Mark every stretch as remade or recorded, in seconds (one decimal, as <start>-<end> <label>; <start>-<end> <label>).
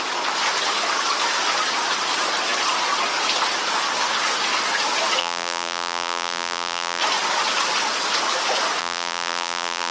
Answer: 0.0-5.2 recorded; 5.2-7.0 remade; 7.0-8.8 recorded; 8.8-9.9 remade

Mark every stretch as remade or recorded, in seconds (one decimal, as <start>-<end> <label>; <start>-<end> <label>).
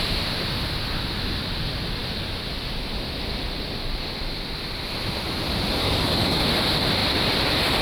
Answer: 0.0-5.8 recorded; 5.8-6.4 remade; 6.4-7.8 recorded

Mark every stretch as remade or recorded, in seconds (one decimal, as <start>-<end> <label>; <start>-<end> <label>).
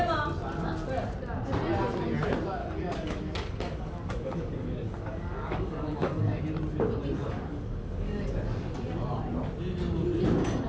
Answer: 0.0-2.6 recorded; 2.6-6.4 remade; 6.4-7.2 recorded; 7.2-8.3 remade; 8.3-10.7 recorded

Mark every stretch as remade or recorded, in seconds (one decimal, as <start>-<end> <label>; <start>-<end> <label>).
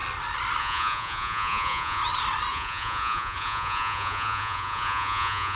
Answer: 0.0-0.6 recorded; 0.6-2.0 remade; 2.0-2.5 recorded; 2.5-5.6 remade